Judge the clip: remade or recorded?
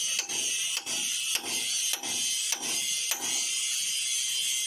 recorded